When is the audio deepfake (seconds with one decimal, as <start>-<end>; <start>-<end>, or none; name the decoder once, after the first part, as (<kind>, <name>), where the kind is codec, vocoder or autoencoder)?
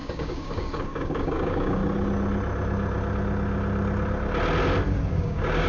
0.0-1.8 (codec, DAC); 5.1-5.7